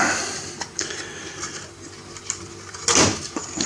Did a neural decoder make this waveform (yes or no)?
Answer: no